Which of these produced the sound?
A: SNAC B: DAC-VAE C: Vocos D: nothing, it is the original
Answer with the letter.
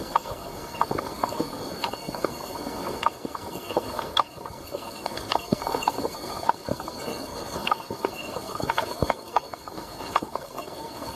A